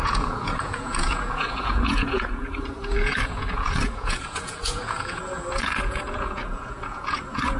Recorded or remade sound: remade